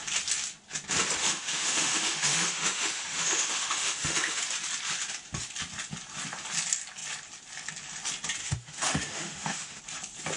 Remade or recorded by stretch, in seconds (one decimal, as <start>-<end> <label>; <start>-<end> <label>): 0.0-1.2 recorded; 1.2-4.4 remade; 4.4-8.4 recorded; 8.4-9.8 remade; 9.8-10.4 recorded